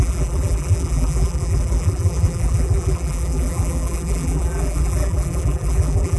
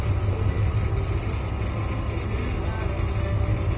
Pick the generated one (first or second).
first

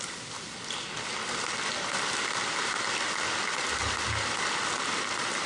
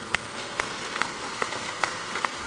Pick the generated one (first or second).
second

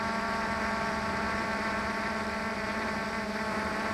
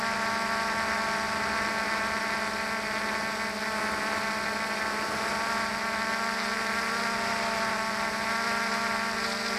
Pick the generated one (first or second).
first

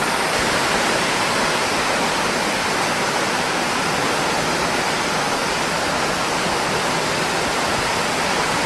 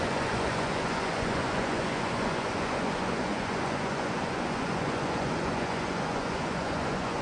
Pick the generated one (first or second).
second